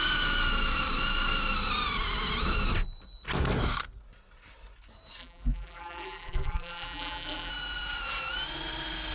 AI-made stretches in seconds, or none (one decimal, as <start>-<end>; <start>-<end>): 5.2-7.5